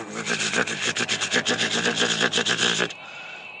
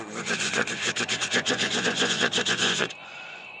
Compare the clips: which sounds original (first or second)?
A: first